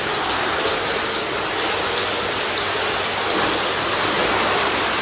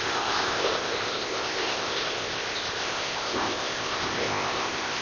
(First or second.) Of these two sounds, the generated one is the second